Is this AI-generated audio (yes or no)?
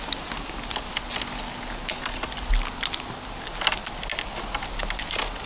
no